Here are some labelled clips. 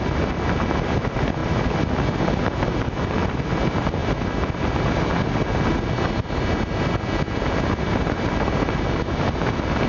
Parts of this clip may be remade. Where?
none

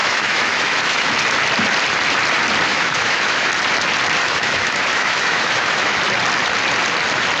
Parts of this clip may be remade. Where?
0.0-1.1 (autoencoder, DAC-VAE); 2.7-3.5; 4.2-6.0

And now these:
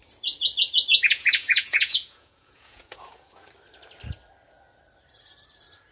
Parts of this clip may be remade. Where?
0.9-3.5 (vocoder, Vocos)

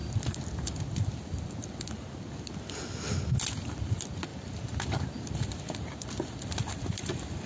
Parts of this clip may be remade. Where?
0.0-2.6 (vocoder, BigVGAN v2); 4.3-7.0

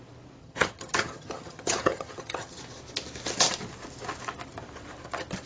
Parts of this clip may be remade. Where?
0.4-2.6 (vocoder, HiFi-GAN)

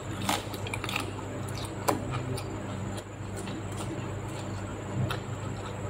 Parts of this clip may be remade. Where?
0.0-1.9 (vocoder, BigVGAN v2); 2.8-3.6